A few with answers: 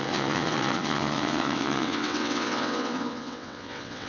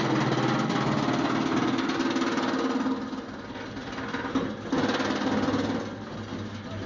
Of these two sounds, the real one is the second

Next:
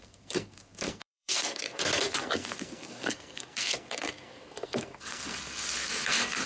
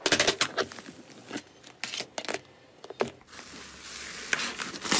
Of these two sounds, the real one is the second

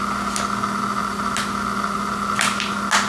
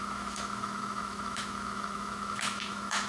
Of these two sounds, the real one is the first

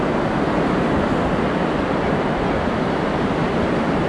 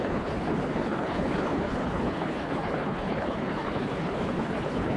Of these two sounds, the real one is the first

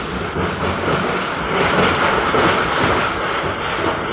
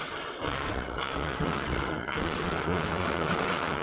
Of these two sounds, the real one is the first